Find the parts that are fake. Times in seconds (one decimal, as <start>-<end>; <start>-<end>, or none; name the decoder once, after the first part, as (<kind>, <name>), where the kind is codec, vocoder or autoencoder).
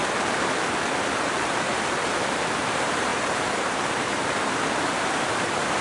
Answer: 1.9-5.8 (vocoder, BigVGAN v2)